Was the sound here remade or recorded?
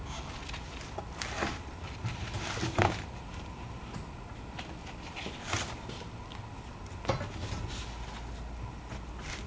recorded